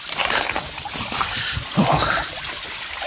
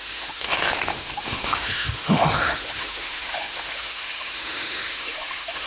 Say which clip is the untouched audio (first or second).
first